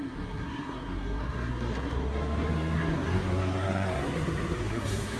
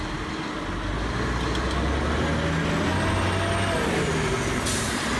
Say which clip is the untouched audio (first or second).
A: second